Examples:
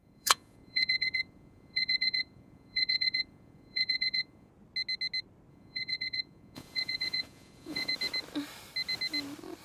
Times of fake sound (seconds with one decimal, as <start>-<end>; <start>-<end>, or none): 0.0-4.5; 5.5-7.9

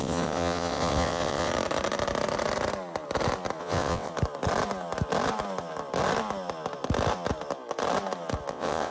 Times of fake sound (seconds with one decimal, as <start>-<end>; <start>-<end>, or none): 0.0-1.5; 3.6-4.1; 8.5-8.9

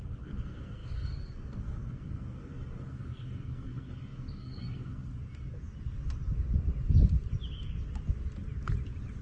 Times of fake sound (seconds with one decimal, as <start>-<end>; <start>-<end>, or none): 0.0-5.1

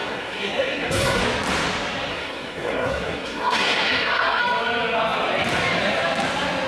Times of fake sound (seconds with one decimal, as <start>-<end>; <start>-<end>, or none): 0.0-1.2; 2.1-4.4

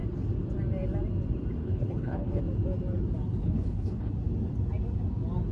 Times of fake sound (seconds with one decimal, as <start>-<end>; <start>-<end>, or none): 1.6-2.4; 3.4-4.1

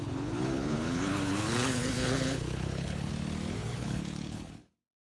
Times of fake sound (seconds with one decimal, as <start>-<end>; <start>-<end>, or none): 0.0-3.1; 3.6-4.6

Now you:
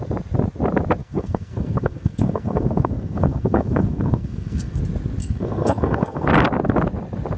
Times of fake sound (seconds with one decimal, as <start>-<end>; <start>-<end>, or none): 1.0-4.8; 5.2-6.3